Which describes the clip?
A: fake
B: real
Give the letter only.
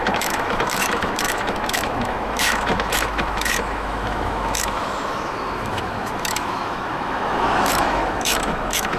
A